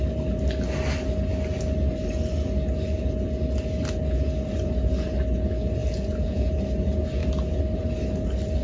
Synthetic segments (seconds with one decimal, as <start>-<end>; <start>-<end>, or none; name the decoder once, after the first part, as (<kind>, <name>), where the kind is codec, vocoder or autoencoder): 5.8-6.5 (vocoder, Vocos)